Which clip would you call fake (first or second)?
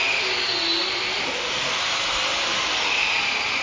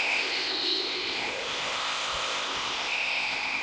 second